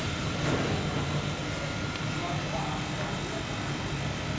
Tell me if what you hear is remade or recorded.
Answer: recorded